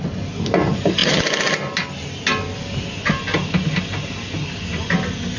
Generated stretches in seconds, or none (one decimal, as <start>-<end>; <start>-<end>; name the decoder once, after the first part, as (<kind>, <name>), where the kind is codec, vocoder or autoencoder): none